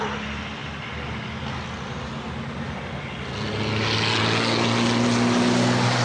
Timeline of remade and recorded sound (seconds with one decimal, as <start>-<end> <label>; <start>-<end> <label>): 0.0-6.0 recorded